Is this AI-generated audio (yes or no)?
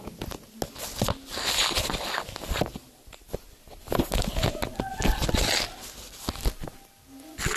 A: no